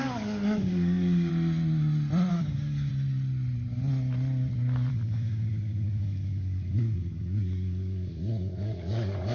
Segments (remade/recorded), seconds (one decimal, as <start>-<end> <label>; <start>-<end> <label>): 0.0-1.3 remade; 1.3-2.3 recorded; 2.3-2.9 remade; 2.9-4.9 recorded; 4.9-9.3 remade